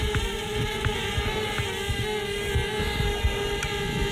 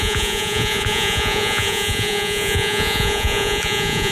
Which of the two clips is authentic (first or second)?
first